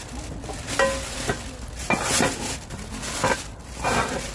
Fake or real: real